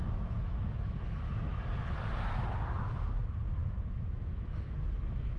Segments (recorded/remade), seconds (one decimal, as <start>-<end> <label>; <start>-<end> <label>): 0.0-1.5 remade; 1.5-2.9 recorded; 2.9-5.4 remade